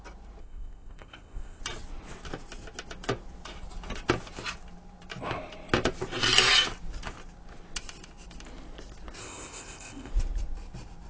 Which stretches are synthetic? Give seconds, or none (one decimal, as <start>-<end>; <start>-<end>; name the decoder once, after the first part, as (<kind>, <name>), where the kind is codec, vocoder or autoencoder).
0.4-1.6 (codec, ZipCodec); 9.2-10.1